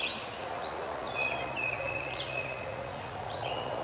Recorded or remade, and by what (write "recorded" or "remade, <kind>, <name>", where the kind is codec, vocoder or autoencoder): remade, vocoder, Vocos